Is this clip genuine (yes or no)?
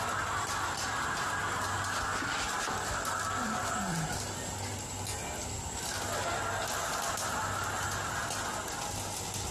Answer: yes